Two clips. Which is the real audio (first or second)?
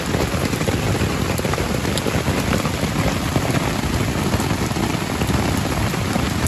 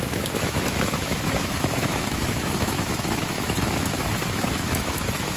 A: first